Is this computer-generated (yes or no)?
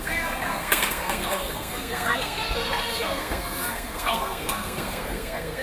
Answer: yes